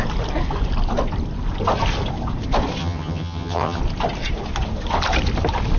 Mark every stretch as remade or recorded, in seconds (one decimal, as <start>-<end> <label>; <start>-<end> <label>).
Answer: 0.0-2.8 recorded; 2.8-3.8 remade; 3.8-5.8 recorded